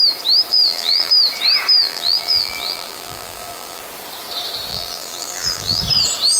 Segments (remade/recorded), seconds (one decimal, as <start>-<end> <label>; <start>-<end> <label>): 0.0-0.5 recorded; 0.5-1.1 remade; 1.1-1.8 recorded; 1.8-3.8 remade; 3.8-4.7 recorded; 4.7-5.8 remade; 5.8-6.4 recorded